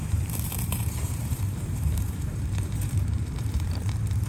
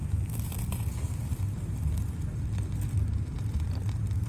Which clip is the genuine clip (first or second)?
second